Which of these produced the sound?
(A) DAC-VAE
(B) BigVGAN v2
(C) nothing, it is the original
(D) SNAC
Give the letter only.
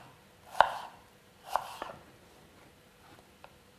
C